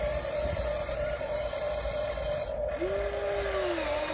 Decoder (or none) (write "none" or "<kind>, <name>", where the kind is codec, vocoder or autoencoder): none